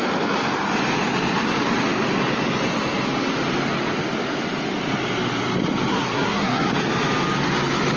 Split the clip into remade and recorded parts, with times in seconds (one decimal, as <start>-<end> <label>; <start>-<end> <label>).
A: 0.0-5.9 recorded; 5.9-6.7 remade; 6.7-8.0 recorded